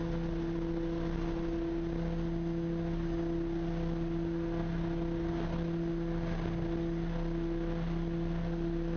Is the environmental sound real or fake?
real